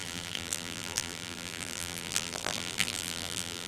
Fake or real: fake